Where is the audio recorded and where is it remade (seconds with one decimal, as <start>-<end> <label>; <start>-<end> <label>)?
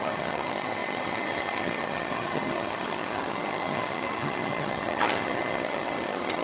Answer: 0.0-6.4 remade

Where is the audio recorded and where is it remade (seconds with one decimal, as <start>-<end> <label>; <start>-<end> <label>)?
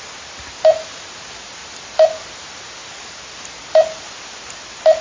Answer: 0.0-5.0 recorded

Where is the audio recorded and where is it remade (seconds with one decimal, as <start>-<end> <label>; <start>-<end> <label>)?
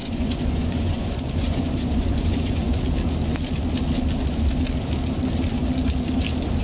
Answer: 0.0-2.8 remade; 2.8-6.6 recorded